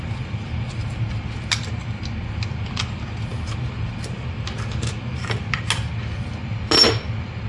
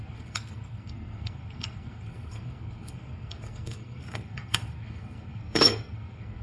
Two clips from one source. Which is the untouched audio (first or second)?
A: first